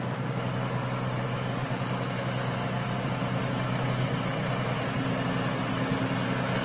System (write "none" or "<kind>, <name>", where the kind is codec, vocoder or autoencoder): none